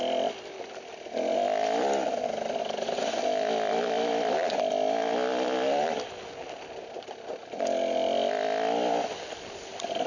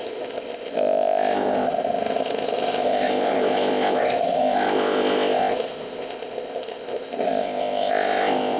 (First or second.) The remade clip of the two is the second